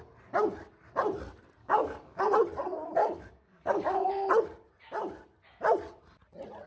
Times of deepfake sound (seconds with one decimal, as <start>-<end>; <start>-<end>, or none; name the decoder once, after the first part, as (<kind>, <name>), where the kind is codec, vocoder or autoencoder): 1.6-2.2 (codec, DAC); 3.0-4.1

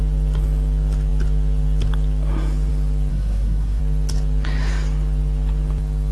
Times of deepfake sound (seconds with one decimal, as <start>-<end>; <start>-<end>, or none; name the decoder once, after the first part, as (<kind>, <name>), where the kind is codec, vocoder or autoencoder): 3.1-3.8 (codec, SNAC)

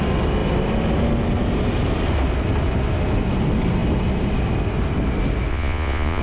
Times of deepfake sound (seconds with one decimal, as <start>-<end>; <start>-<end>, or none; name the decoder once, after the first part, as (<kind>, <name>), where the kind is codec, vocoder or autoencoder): 5.5-6.2 (vocoder, Vocos)

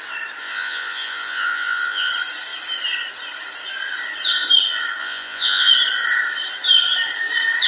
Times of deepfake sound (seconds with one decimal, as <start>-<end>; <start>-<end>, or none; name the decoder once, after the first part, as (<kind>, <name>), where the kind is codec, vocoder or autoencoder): 0.4-2.1 (vocoder, Vocos); 5.0-5.7

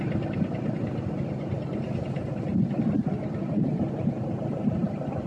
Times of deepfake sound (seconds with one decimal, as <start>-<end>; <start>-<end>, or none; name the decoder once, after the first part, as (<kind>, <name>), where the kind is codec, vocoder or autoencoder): 0.0-2.5 (vocoder, BigVGAN v2); 3.2-5.3

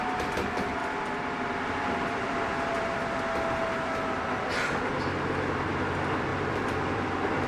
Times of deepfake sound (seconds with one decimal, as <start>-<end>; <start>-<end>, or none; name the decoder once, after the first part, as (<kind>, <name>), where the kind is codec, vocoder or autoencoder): 0.8-3.2 (vocoder, BigVGAN v2); 6.3-7.0

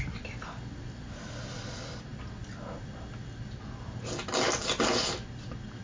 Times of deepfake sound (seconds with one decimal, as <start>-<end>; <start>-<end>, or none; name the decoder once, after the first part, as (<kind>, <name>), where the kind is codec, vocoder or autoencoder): none